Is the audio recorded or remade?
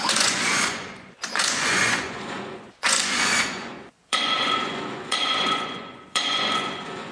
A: remade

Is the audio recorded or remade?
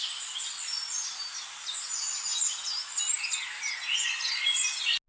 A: recorded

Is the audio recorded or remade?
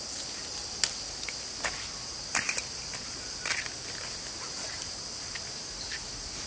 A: recorded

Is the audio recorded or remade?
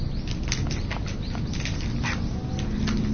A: recorded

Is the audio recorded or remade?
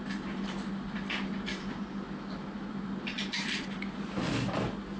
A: recorded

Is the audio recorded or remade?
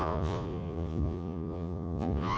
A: remade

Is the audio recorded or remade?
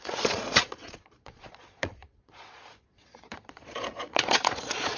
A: remade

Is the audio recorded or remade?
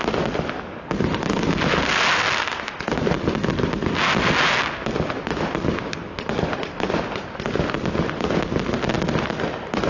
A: recorded